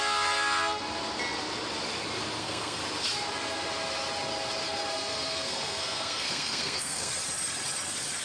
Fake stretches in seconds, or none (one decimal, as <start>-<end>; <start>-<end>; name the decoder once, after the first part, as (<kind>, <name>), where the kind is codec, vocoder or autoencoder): 0.0-0.8 (codec, SNAC); 2.4-2.8; 4.9-7.1